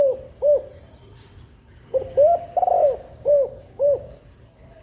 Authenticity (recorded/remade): recorded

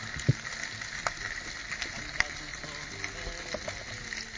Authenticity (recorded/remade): recorded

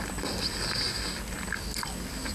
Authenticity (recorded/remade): recorded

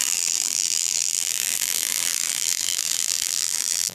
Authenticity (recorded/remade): remade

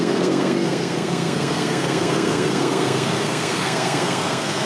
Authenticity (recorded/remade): remade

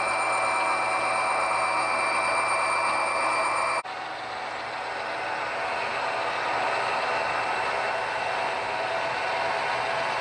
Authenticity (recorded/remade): recorded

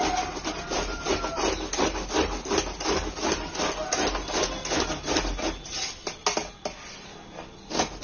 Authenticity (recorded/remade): recorded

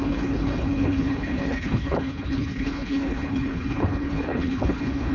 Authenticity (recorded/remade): remade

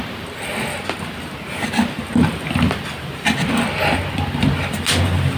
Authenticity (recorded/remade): recorded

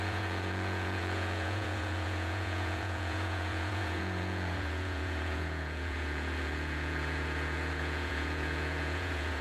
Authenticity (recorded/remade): remade